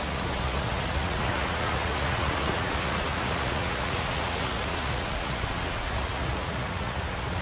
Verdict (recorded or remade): remade